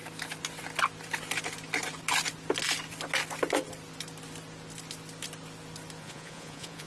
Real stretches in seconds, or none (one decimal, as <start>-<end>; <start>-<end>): 0.0-6.0